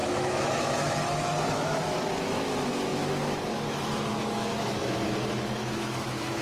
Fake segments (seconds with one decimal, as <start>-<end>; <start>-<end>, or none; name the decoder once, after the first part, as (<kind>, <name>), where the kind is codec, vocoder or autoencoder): 0.0-6.4 (autoencoder, DAC-VAE)